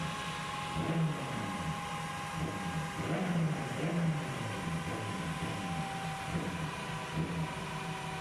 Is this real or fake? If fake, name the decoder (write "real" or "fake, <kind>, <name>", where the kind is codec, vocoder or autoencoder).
real